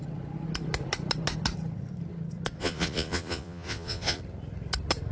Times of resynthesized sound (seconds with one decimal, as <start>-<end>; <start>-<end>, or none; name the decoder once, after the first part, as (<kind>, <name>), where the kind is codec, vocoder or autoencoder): 2.6-4.2 (vocoder, Vocos)

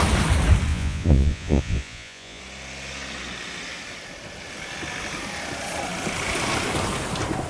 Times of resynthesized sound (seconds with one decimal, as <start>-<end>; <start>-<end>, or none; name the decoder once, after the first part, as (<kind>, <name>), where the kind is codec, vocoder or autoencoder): 0.7-2.4 (vocoder, Vocos)

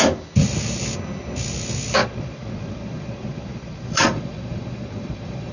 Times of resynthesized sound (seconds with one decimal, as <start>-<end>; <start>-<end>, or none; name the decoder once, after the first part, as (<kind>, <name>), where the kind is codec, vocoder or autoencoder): 2.0-5.5 (vocoder, Vocos)

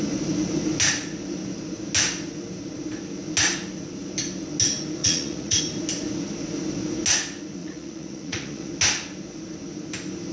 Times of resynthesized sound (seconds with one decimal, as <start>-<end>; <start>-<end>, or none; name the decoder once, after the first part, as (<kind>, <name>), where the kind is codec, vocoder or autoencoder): 5.0-5.6 (vocoder, Vocos); 7.6-8.7